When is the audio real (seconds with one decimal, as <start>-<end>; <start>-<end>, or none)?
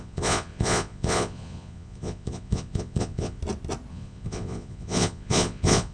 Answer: 3.4-3.9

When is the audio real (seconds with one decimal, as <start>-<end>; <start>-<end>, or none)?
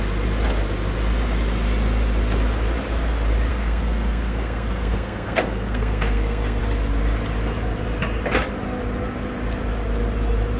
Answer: 0.0-3.5; 6.6-10.6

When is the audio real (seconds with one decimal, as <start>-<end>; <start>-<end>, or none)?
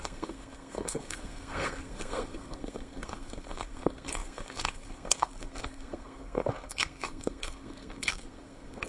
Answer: none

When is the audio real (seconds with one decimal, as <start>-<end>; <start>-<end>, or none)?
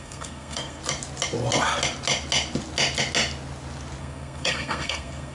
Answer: 0.8-4.0